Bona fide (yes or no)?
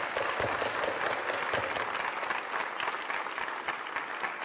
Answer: yes